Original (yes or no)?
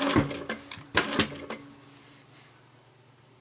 yes